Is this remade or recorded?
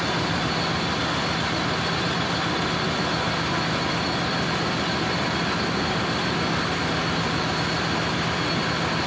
recorded